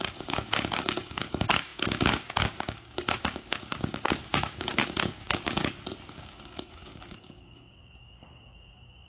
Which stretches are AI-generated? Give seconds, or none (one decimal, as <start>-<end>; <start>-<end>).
0.0-5.6; 6.1-9.1